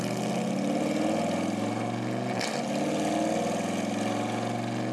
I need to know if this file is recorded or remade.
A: recorded